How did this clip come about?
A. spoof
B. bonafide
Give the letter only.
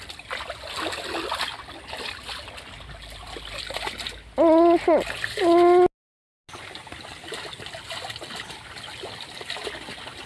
B